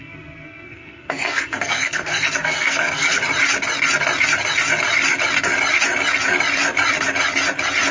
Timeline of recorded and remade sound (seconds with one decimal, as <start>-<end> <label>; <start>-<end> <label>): 0.0-3.2 remade; 3.2-7.9 recorded